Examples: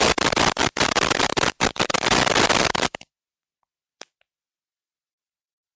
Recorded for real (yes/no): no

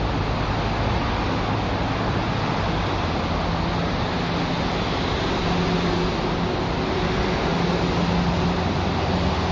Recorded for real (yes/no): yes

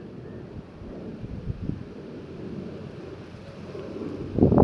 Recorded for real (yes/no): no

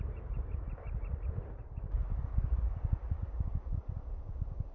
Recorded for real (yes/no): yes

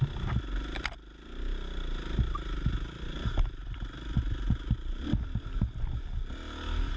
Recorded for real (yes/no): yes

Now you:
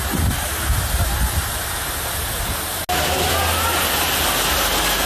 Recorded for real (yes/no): yes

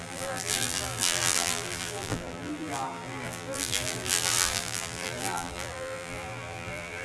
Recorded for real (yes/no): no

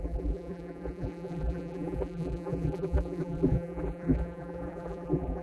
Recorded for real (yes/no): no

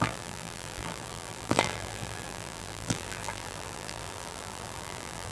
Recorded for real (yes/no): no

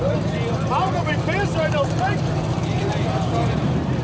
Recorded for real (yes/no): no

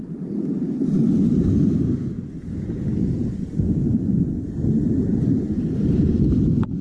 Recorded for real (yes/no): no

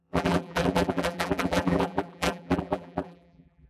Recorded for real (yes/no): no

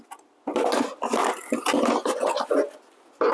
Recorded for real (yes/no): yes